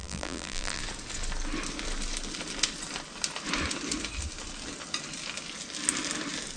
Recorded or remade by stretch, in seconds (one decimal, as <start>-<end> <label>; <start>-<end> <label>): 0.0-0.8 remade; 0.8-6.6 recorded